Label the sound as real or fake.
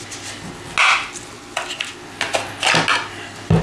real